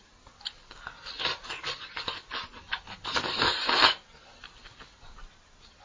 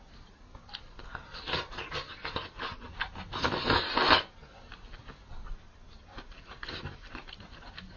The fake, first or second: first